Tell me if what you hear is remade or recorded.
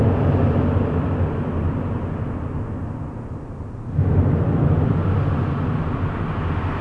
recorded